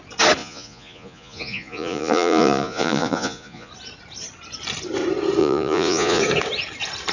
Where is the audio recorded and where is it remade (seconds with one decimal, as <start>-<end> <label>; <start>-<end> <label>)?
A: 0.0-0.4 recorded; 0.4-3.7 remade; 3.7-5.4 recorded; 5.4-6.2 remade; 6.2-7.1 recorded